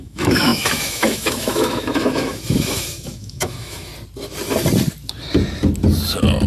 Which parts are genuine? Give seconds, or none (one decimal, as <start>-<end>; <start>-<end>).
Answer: 3.9-6.5